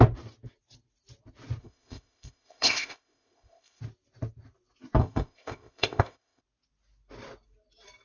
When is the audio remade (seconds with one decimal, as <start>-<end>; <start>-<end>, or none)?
1.6-3.8; 5.0-6.4